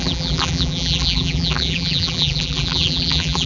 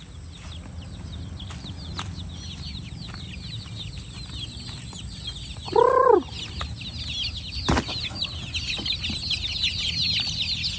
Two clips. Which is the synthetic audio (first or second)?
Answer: first